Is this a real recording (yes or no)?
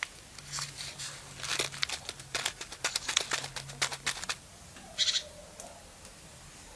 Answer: yes